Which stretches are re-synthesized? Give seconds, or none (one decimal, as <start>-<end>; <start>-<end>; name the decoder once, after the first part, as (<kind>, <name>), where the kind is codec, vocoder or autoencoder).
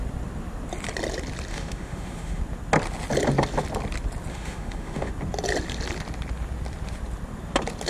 1.5-2.4 (autoencoder, DAC-VAE); 4.3-5.1